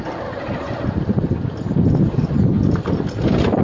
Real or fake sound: real